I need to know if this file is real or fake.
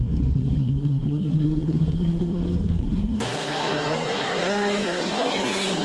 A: fake